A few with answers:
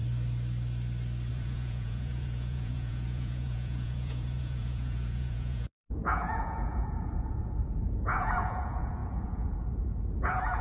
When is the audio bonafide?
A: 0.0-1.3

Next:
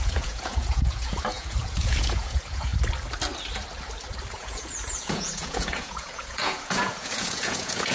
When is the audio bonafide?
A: 2.7-4.3

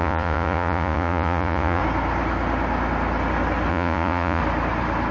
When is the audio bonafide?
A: 1.8-3.7; 4.4-5.1

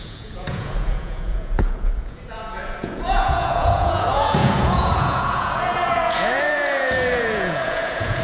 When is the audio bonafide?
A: none